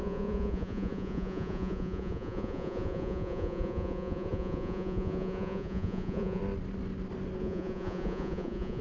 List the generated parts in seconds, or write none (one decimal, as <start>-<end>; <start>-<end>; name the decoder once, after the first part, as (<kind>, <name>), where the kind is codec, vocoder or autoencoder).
0.0-6.4 (vocoder, Vocos); 7.4-8.8